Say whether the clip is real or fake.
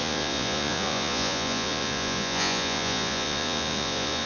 fake